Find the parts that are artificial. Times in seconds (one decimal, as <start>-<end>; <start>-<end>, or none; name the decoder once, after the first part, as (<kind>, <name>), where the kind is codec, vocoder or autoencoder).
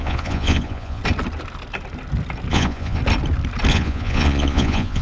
0.0-1.0 (vocoder, Vocos); 2.5-3.0; 3.7-5.0